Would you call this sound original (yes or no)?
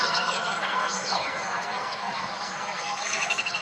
no